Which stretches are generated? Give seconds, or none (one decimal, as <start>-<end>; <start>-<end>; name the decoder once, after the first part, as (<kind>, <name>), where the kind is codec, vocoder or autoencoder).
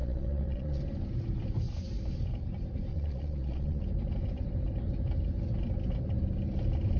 0.0-0.8 (vocoder, Vocos); 2.9-3.8